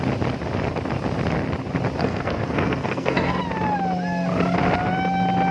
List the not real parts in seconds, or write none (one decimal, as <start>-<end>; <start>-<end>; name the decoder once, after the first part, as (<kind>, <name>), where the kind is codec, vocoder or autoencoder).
2.0-3.4 (codec, SNAC)